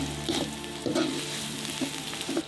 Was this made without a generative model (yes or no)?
yes